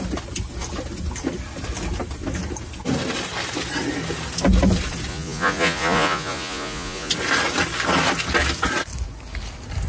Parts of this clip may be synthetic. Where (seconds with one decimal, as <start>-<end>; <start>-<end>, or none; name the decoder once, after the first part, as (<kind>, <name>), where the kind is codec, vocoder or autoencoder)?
5.1-7.1 (vocoder, Vocos)